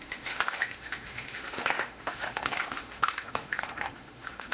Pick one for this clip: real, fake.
fake